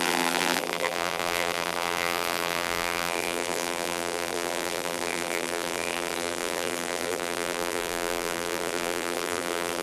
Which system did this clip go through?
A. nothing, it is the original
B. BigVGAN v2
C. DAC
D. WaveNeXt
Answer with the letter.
B